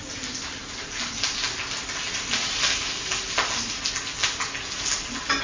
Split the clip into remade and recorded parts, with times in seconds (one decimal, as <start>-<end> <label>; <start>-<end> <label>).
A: 0.0-5.4 recorded